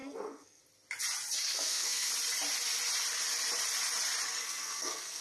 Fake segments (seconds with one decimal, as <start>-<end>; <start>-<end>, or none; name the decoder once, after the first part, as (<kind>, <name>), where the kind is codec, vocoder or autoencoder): 0.0-0.6 (codec, SNAC); 1.5-2.1; 4.4-5.2